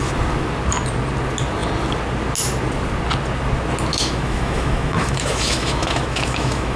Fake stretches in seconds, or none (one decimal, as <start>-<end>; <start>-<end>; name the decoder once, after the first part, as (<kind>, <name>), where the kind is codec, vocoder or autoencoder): 3.9-6.8 (autoencoder, DAC-VAE)